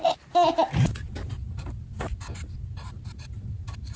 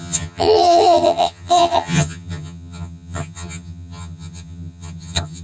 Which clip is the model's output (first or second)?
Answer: second